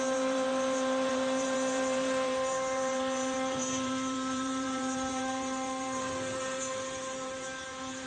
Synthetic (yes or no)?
yes